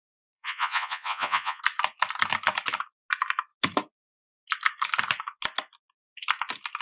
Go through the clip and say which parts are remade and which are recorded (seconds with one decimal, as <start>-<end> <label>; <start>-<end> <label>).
0.0-1.6 remade; 1.6-6.8 recorded